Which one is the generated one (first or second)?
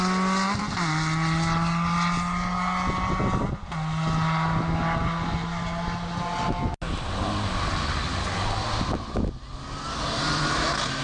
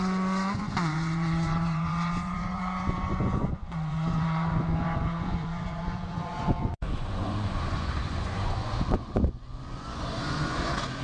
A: second